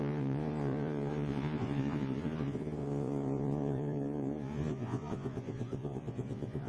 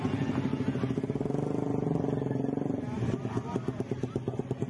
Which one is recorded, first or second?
second